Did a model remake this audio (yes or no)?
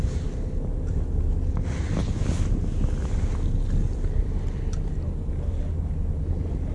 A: no